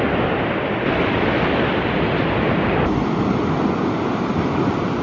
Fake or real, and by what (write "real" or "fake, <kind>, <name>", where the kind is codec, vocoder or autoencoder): real